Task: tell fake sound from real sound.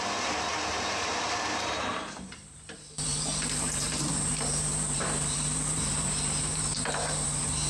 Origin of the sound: fake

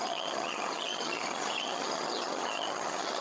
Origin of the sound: fake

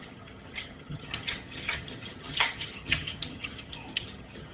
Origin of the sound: fake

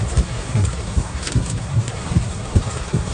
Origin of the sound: fake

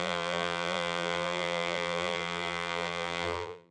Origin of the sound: fake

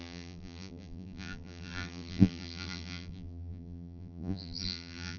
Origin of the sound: fake